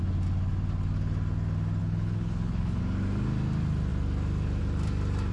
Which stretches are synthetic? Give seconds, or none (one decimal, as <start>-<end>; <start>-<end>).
1.8-2.8